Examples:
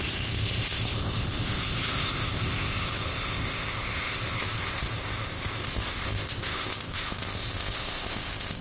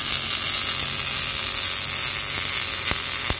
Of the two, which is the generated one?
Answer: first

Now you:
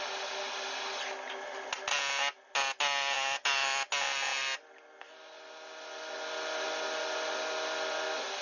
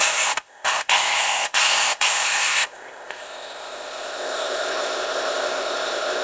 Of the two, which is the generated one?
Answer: second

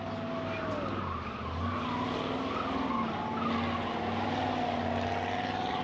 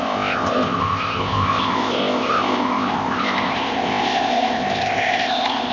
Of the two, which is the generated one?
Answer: second